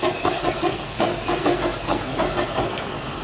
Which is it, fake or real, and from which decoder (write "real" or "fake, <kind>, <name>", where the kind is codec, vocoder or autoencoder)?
fake, codec, SNAC